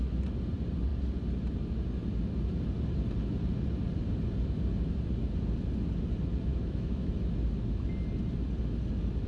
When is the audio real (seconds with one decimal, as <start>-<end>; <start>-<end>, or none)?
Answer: 0.0-6.5; 7.1-9.3